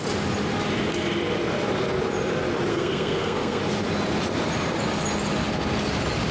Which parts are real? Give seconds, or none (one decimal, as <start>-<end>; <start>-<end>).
0.0-2.7; 3.6-6.3